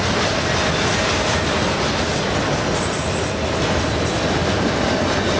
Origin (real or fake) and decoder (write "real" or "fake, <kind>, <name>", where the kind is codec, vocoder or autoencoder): real